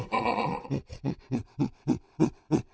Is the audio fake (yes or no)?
yes